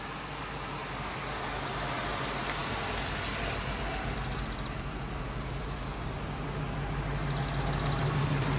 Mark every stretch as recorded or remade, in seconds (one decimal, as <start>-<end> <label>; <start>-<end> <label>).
0.0-8.6 recorded